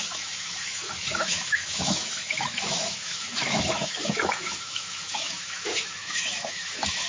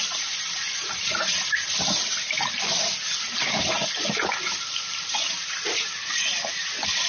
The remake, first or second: first